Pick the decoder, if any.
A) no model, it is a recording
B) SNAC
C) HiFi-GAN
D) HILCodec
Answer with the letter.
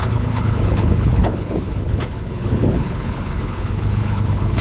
D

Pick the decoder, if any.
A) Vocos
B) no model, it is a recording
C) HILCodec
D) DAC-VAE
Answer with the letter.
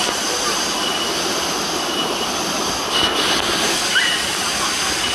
B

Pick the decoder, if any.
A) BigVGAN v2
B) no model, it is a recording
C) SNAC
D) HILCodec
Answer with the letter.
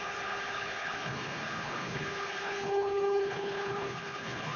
D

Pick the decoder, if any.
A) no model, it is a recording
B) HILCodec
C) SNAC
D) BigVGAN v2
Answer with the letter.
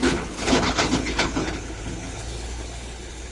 B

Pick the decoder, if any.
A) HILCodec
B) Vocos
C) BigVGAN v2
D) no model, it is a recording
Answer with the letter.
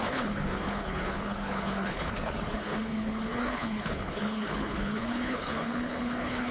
A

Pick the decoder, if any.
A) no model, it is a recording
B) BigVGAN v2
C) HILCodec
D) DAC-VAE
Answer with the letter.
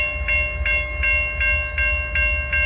A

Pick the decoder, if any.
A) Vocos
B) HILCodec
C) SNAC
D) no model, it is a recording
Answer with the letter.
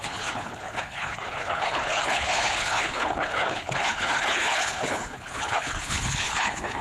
B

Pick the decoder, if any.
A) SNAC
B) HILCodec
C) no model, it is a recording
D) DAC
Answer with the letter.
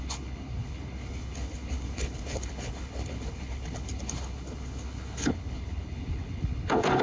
B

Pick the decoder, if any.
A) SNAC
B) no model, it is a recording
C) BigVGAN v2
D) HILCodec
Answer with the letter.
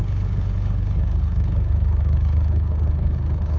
D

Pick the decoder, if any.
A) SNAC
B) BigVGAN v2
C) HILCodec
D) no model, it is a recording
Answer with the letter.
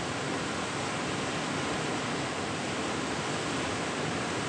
D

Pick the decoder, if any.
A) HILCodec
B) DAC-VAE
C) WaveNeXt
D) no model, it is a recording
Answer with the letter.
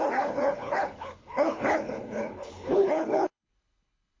A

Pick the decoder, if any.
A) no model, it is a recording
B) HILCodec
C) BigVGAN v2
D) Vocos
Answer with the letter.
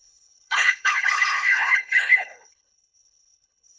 B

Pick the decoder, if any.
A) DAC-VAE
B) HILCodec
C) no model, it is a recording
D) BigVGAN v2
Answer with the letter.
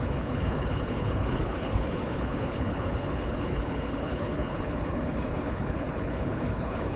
B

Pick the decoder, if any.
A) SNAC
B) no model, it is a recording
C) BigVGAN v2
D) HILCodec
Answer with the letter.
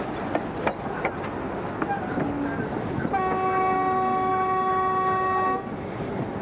B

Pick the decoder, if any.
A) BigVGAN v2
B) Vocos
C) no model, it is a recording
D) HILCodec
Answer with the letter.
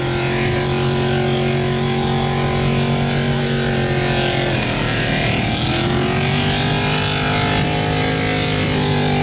C